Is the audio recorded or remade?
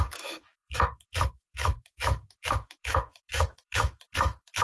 remade